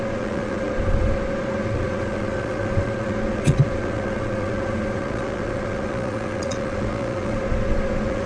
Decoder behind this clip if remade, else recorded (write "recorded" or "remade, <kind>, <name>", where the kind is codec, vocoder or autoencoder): remade, vocoder, Vocos